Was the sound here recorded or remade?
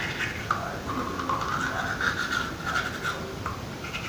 recorded